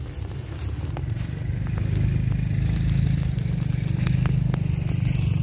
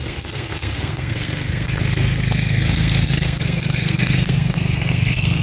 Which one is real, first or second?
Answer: first